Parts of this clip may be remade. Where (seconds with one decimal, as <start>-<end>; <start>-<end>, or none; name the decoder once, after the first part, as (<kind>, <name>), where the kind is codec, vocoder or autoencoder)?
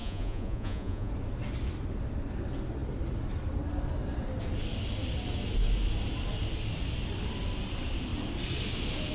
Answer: 0.0-1.1 (vocoder, Vocos)